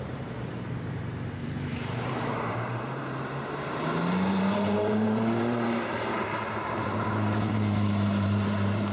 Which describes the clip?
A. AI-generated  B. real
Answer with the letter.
A